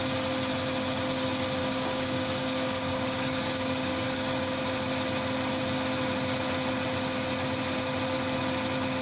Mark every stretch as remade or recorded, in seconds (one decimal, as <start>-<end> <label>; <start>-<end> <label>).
0.0-1.6 recorded; 1.6-4.6 remade; 4.6-9.0 recorded